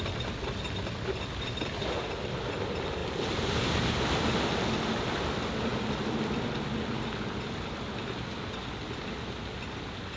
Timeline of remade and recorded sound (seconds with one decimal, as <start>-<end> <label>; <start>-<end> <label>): 0.0-10.2 recorded